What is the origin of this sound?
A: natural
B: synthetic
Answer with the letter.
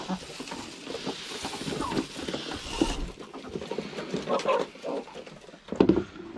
A